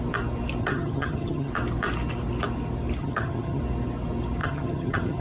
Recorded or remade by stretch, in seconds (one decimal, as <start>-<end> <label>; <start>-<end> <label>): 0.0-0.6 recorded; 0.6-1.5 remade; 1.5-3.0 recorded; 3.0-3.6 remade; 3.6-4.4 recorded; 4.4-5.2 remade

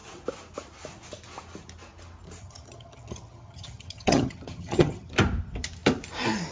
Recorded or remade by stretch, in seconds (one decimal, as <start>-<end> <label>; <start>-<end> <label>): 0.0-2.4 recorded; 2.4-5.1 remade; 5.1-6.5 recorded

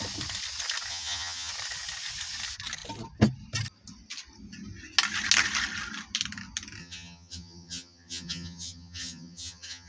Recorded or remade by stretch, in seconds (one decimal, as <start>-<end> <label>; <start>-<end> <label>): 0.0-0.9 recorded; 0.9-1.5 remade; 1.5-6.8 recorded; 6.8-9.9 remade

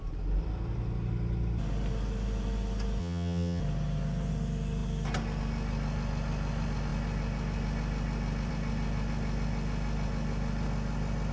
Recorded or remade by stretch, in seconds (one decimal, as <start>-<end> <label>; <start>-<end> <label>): 0.0-3.0 recorded; 3.0-3.6 remade; 3.6-11.3 recorded

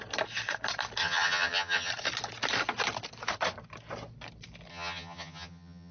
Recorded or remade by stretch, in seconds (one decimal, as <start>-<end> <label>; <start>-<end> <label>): 0.0-1.0 recorded; 1.0-1.9 remade; 1.9-4.7 recorded; 4.7-5.9 remade

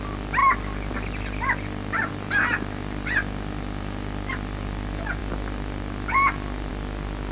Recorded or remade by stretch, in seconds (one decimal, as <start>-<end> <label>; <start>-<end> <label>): 0.0-7.3 recorded

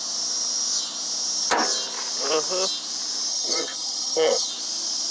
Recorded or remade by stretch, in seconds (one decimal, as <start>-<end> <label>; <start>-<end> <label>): 0.0-3.3 recorded; 3.3-4.5 remade; 4.5-5.1 recorded

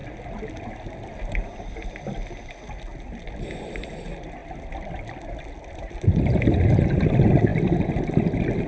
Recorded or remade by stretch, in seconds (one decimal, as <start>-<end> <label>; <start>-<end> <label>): 0.0-8.7 recorded